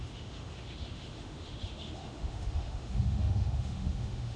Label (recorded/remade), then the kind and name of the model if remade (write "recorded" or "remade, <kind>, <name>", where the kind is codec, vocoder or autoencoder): remade, autoencoder, DAC-VAE